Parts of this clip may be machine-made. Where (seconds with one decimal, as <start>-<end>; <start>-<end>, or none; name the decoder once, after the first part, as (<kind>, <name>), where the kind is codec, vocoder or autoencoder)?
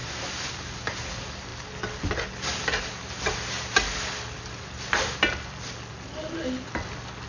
none